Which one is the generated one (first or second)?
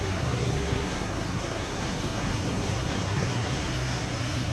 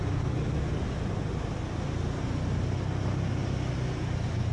first